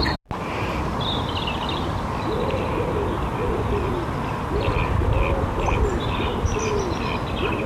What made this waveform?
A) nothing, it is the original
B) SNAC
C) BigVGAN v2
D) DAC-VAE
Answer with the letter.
A